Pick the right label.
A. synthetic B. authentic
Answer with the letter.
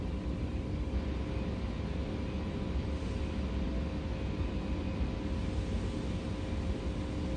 B